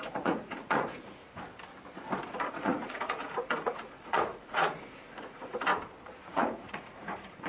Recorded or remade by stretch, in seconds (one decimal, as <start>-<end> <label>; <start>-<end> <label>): 0.0-1.2 remade; 1.2-2.3 recorded; 2.3-5.7 remade; 5.7-6.3 recorded; 6.3-7.5 remade

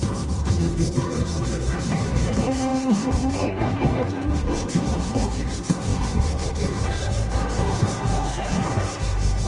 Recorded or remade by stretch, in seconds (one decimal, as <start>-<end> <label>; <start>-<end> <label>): 0.0-9.5 remade

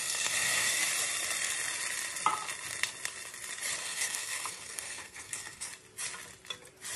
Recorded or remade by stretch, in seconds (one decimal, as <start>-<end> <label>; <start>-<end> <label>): 0.0-0.9 remade; 0.9-3.8 recorded; 3.8-5.7 remade; 5.7-7.0 recorded

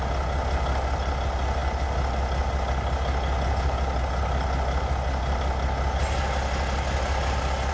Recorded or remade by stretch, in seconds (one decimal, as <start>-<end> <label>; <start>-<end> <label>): 0.0-7.7 recorded